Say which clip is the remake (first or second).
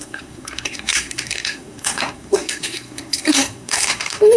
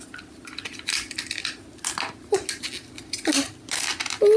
first